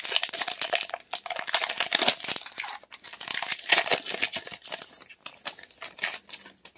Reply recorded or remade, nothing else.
recorded